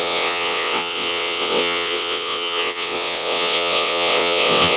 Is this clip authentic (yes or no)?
no